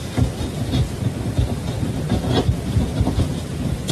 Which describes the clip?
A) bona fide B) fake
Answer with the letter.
A